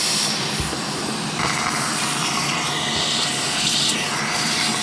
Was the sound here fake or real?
real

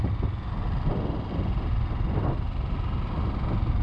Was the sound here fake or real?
real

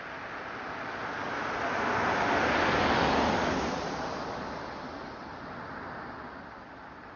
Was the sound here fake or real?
real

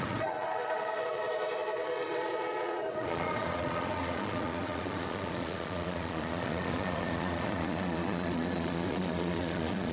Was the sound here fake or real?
fake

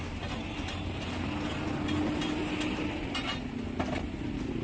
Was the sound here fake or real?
real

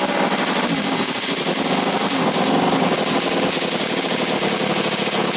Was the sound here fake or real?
real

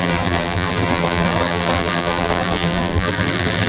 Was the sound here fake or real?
fake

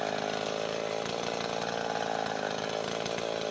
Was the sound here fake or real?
real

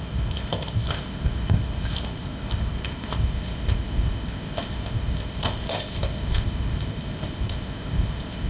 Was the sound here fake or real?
fake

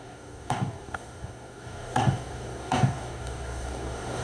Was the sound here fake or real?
fake